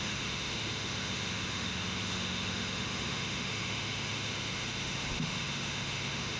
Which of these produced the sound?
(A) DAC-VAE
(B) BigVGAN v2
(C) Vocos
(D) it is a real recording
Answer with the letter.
A